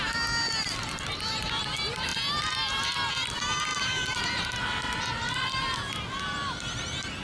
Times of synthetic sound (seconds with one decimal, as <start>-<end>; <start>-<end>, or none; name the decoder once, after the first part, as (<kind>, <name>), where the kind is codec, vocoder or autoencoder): 0.0-7.2 (vocoder, BigVGAN v2)